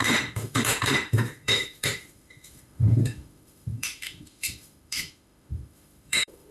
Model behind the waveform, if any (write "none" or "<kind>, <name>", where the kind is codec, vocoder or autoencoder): autoencoder, DAC-VAE